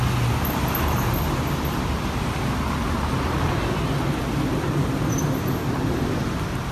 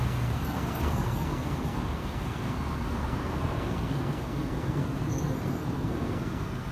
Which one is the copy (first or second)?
second